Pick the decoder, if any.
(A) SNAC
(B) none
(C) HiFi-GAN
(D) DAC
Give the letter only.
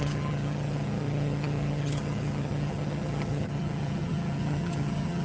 C